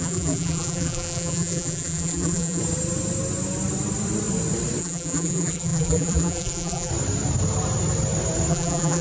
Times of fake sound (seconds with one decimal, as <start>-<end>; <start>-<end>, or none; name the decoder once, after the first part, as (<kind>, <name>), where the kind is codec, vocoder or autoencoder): 0.0-2.6 (vocoder, BigVGAN v2); 4.8-6.9; 8.5-9.0